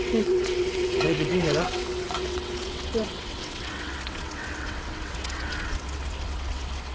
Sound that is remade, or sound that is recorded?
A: remade